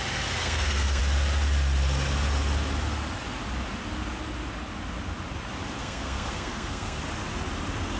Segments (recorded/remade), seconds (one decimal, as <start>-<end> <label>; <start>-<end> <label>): 0.0-0.4 recorded; 0.4-1.0 remade; 1.0-5.8 recorded; 5.8-7.0 remade; 7.0-8.0 recorded